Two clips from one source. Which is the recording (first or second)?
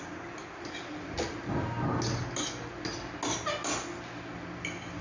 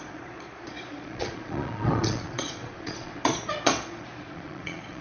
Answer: first